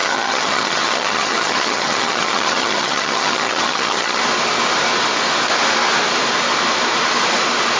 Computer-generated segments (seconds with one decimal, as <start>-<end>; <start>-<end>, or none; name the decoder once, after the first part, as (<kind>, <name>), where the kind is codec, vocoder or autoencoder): 0.0-4.2 (vocoder, HiFi-GAN)